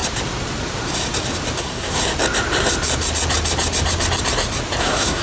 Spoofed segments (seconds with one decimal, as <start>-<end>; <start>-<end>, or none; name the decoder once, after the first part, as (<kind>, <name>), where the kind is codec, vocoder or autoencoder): 1.6-2.0 (codec, SNAC); 4.8-5.2